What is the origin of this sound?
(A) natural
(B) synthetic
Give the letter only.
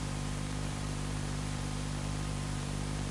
B